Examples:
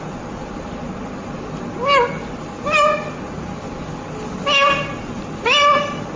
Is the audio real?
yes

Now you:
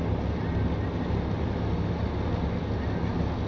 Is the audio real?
yes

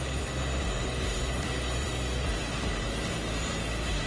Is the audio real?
yes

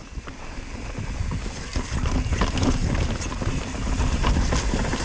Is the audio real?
yes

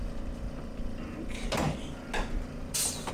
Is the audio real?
yes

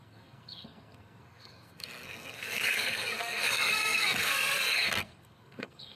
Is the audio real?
no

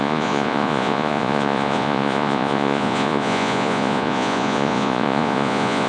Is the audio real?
no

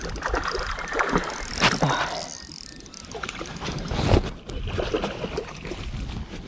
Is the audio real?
yes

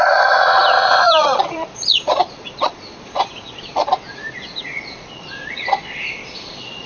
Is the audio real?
no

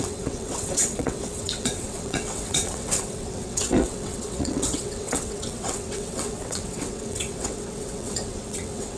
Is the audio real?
no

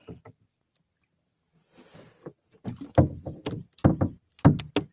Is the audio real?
yes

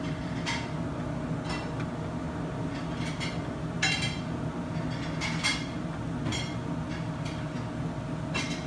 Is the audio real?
yes